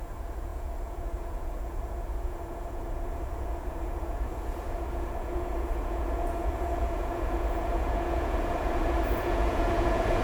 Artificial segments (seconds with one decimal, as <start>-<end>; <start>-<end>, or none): 0.0-10.2